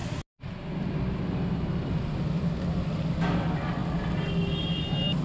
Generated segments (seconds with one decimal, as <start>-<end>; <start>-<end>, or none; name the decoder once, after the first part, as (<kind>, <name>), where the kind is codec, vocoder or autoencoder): none